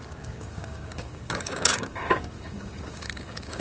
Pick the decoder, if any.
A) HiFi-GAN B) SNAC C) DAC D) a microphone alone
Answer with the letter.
C